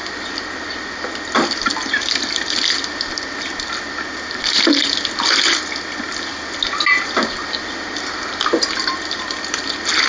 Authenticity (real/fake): real